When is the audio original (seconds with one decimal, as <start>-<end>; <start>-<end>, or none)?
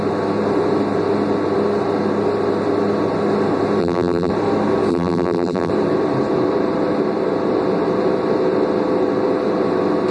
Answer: 0.0-3.8; 4.3-4.9; 5.7-10.1